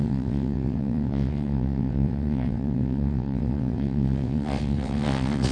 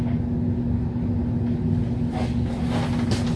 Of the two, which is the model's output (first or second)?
first